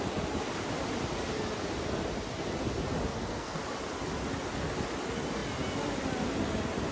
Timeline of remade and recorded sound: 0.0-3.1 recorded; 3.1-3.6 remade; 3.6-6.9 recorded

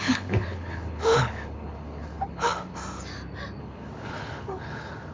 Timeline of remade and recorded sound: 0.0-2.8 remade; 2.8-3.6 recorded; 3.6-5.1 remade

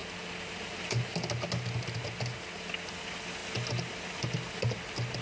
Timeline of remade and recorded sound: 0.0-5.2 recorded

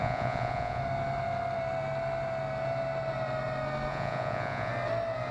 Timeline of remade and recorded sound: 0.0-0.8 remade; 0.8-3.9 recorded; 3.9-4.7 remade; 4.7-5.3 recorded